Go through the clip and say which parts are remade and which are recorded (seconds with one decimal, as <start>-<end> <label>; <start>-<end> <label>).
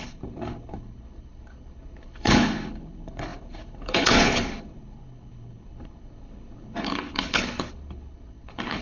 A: 0.0-8.8 remade